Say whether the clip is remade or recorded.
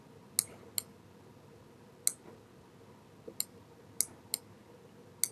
recorded